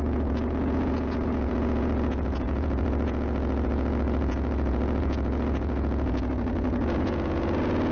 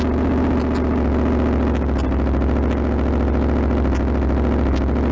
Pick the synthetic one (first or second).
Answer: first